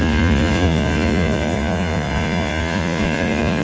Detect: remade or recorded remade